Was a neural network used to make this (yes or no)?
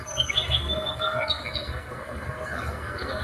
yes